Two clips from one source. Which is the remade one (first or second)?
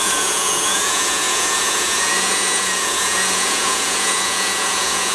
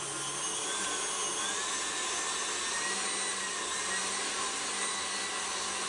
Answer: first